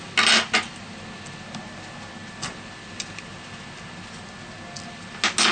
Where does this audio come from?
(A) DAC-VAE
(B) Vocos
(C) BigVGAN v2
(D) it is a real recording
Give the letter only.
D